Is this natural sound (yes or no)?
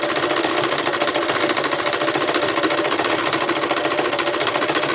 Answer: yes